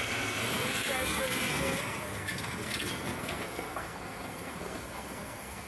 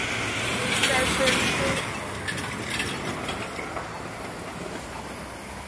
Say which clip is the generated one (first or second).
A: first